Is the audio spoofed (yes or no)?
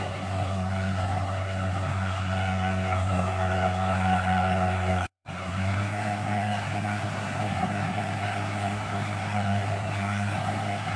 yes